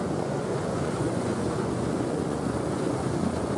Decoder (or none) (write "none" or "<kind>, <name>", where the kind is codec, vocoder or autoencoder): vocoder, Vocos